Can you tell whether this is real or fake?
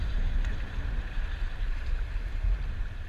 fake